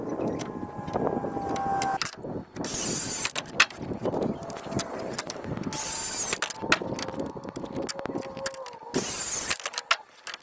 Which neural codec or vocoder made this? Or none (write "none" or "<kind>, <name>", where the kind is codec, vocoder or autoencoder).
none